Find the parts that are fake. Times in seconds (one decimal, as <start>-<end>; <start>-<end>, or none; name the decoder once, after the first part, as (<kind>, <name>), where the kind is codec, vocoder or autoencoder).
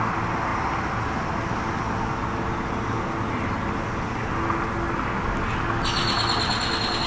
none